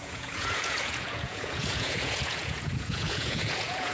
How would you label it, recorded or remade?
remade